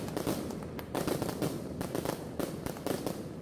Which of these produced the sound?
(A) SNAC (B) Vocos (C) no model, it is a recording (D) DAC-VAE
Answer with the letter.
C